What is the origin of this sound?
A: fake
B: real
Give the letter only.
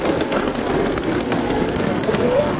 A